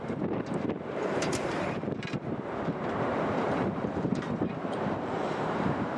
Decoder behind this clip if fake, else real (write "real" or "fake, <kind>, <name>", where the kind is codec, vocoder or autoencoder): fake, vocoder, BigVGAN v2